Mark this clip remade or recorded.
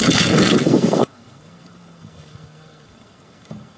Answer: remade